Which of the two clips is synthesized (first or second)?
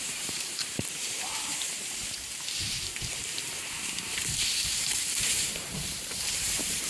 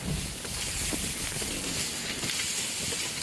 first